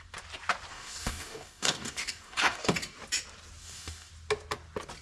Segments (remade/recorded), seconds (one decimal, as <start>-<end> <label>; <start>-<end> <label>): 0.0-0.7 recorded; 0.7-2.7 remade; 2.7-3.6 recorded; 3.6-4.1 remade; 4.1-5.0 recorded